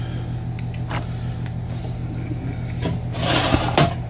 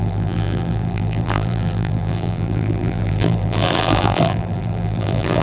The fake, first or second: second